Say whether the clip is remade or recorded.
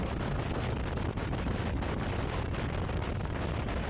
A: recorded